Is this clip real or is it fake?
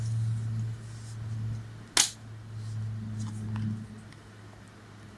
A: real